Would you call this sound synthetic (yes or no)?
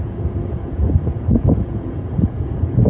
yes